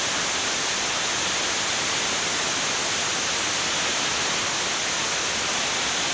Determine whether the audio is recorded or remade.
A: recorded